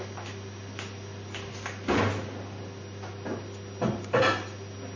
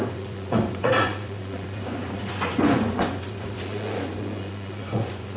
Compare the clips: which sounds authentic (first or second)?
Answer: first